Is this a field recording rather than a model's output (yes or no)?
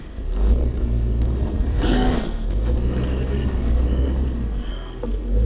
no